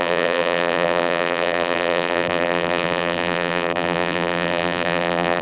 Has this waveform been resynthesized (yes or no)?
yes